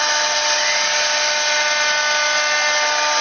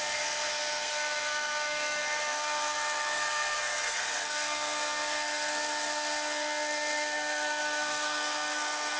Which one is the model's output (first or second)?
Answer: second